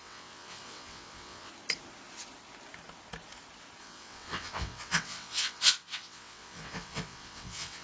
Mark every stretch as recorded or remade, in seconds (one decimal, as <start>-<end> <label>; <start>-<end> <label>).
0.0-1.5 remade; 1.5-3.8 recorded; 3.8-7.8 remade